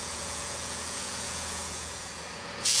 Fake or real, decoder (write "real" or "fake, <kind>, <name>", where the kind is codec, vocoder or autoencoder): fake, vocoder, Vocos